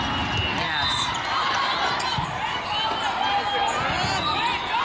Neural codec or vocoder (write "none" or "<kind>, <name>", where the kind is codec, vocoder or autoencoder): none